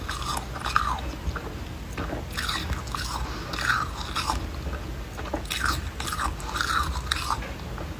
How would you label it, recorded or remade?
recorded